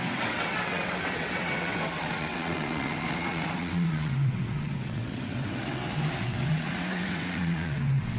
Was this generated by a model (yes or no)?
yes